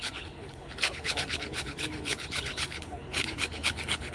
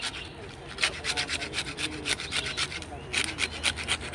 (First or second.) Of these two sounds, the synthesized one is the first